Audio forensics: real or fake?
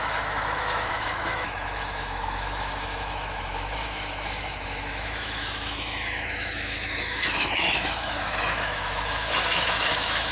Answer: fake